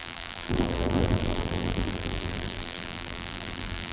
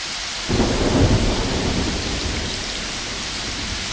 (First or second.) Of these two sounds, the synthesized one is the first